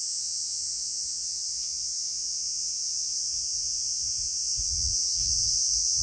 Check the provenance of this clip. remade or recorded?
remade